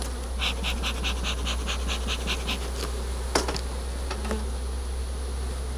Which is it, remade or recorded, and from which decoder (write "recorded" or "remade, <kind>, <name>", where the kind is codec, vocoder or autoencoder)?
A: recorded